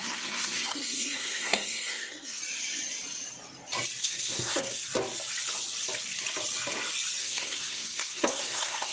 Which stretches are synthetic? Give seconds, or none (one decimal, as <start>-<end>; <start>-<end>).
0.0-2.4; 4.0-4.9; 7.2-8.9